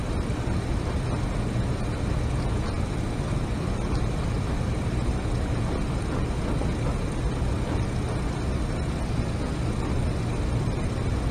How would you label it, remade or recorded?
recorded